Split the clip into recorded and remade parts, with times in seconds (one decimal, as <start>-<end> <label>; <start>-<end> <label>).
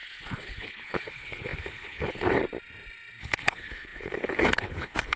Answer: 0.0-2.4 remade; 2.4-3.2 recorded; 3.2-5.2 remade